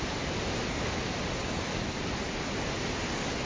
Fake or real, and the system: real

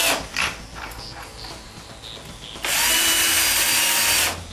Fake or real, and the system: real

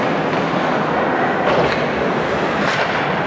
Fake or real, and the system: real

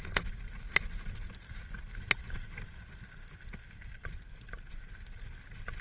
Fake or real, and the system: real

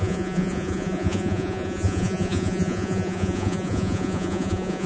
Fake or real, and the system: fake, vocoder, Vocos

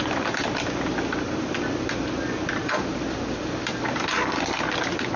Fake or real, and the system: real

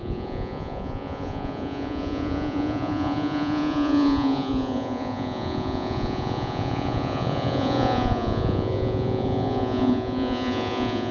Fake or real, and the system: fake, vocoder, Vocos